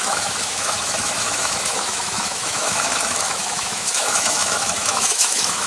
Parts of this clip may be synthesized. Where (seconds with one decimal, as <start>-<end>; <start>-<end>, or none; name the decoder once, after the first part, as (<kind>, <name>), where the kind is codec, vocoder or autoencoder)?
0.0-5.7 (autoencoder, DAC-VAE)